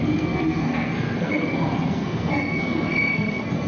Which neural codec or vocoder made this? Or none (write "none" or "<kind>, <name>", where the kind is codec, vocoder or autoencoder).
codec, SNAC